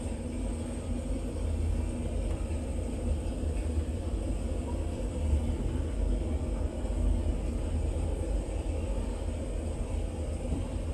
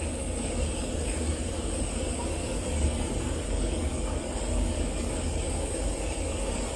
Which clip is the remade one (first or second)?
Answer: second